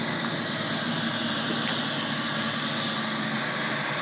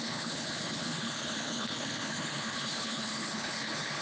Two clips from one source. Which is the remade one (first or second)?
second